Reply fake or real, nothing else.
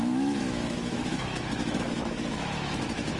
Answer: fake